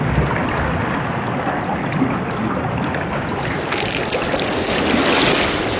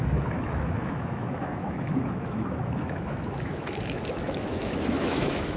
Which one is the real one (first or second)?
first